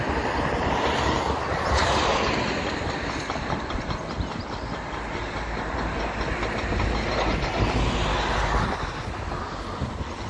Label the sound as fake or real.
real